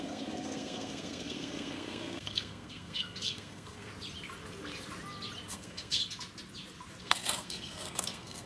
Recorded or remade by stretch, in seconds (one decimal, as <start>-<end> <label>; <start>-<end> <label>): 0.0-3.9 remade; 3.9-5.5 recorded; 5.5-6.0 remade; 6.0-7.0 recorded; 7.0-8.5 remade